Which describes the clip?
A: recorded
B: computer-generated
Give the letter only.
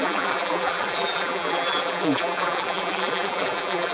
B